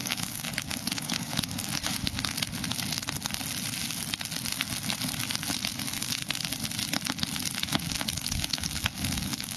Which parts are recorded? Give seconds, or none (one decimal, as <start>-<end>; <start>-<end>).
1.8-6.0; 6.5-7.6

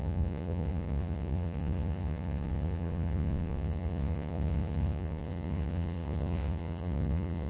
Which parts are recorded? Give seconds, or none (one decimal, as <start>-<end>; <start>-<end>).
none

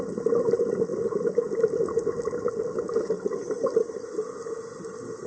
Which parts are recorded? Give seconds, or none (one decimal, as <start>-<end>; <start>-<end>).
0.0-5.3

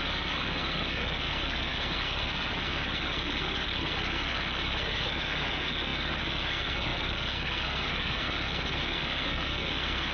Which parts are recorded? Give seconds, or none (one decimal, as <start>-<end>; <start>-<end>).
none

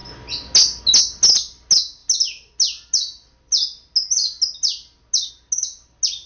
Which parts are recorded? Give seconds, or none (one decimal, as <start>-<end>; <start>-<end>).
0.0-6.3

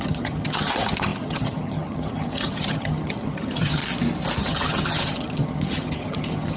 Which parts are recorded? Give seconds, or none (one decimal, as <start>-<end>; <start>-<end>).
3.8-4.4

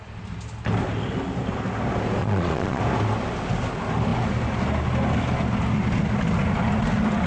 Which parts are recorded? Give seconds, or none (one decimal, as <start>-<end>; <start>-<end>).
0.0-2.2; 2.8-7.3